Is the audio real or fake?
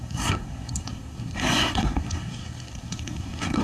fake